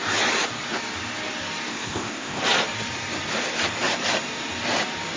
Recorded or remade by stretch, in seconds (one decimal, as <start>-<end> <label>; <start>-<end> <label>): 0.0-1.7 recorded; 1.7-2.4 remade; 2.4-5.2 recorded